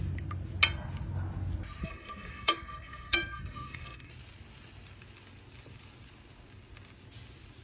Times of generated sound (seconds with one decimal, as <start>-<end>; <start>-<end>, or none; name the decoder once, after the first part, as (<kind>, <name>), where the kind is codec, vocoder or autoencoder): 1.8-4.1 (codec, SNAC)